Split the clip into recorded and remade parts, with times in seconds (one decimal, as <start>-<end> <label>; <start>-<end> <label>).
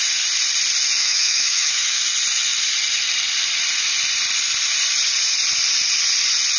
0.0-1.0 recorded; 1.0-2.0 remade; 2.0-6.6 recorded